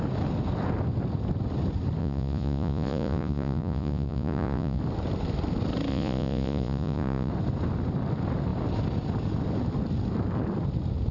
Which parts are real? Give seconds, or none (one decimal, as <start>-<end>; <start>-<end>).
0.0-2.0; 4.8-5.9; 7.3-11.1